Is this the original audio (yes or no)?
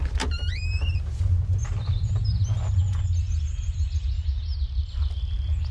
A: yes